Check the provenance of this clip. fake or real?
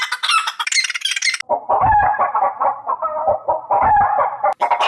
real